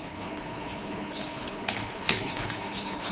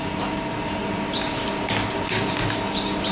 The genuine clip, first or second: second